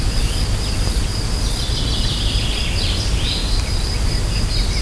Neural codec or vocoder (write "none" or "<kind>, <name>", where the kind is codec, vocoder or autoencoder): none